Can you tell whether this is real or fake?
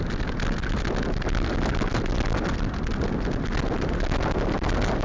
real